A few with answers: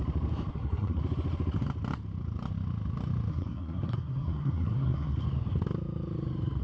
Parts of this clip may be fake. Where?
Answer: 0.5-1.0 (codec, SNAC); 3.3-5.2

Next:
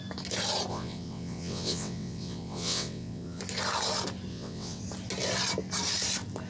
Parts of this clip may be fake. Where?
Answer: 0.7-3.4 (vocoder, WaveNeXt); 4.3-4.8

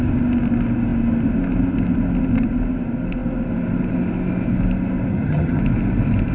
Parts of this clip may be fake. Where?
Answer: 5.1-5.6 (vocoder, HiFi-GAN)